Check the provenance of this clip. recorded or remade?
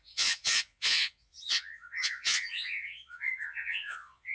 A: remade